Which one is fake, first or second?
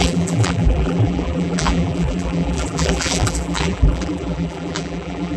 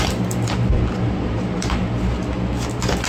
first